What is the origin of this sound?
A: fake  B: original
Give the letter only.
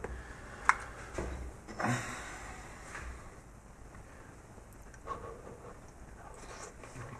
B